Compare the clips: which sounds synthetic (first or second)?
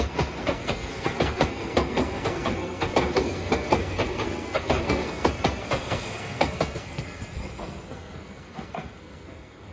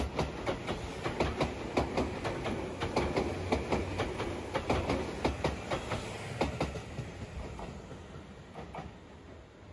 first